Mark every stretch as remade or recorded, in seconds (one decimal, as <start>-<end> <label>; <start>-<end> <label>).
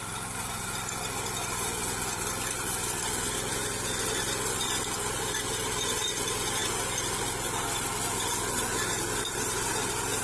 0.0-10.2 recorded